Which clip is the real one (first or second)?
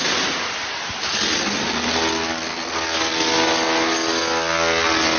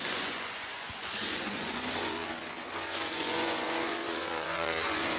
first